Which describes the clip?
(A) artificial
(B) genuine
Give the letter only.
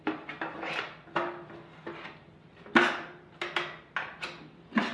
B